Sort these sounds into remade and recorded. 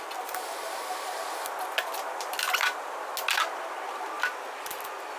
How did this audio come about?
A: recorded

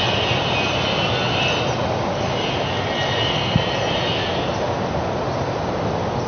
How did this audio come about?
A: recorded